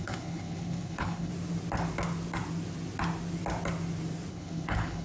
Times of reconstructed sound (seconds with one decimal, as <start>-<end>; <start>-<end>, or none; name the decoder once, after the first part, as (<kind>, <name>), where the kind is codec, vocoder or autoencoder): 0.0-1.3 (codec, HILCodec); 4.3-5.0